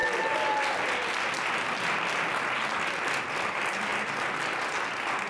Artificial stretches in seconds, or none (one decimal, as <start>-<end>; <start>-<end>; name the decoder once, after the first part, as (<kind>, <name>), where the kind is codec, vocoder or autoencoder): none